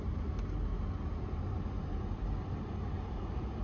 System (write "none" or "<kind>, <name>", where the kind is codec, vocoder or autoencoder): none